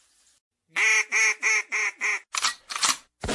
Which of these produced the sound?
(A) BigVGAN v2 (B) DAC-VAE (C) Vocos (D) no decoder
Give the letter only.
D